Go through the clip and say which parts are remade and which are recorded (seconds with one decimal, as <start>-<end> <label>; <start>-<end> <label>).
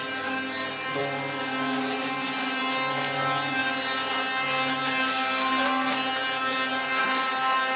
0.0-7.8 recorded